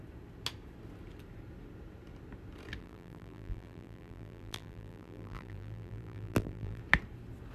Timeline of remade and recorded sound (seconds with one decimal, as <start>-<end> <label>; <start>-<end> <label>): 0.0-2.8 recorded; 2.8-6.8 remade; 6.8-7.5 recorded